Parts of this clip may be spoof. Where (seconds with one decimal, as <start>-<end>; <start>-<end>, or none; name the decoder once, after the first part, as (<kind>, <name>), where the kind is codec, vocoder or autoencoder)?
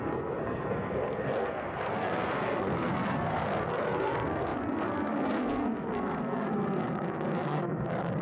0.0-8.2 (codec, SNAC)